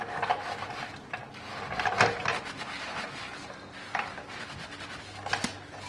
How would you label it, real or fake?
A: real